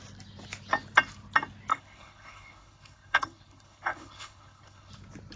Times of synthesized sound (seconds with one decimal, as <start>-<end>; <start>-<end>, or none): 1.7-4.9